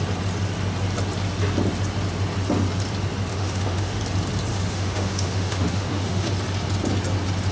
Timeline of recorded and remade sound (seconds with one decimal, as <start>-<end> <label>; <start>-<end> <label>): 0.0-3.3 recorded; 3.3-4.0 remade; 4.0-4.5 recorded; 4.5-6.3 remade; 6.3-7.5 recorded